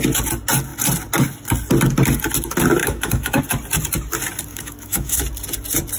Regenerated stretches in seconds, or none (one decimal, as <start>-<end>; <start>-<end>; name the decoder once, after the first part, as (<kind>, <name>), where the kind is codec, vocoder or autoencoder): 2.8-3.4 (autoencoder, DAC-VAE); 4.5-5.2